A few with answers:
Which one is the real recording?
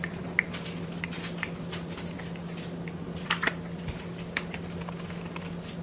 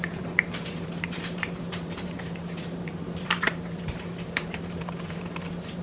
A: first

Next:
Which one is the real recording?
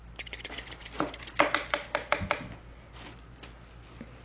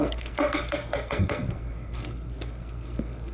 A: first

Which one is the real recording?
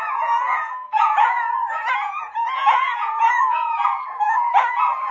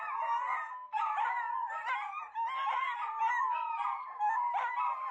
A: second